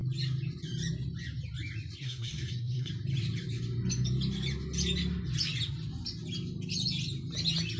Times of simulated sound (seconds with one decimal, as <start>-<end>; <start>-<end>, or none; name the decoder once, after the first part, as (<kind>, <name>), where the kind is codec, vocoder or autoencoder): 2.0-2.9 (codec, SNAC)